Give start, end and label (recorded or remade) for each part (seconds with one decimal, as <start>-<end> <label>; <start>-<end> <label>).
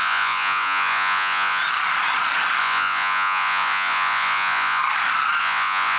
0.0-1.6 remade; 1.6-2.6 recorded; 2.6-4.8 remade; 4.8-5.4 recorded; 5.4-6.0 remade